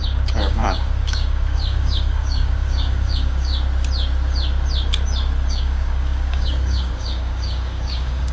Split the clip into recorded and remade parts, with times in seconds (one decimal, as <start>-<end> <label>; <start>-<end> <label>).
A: 0.0-3.5 remade; 3.5-5.5 recorded; 5.5-8.3 remade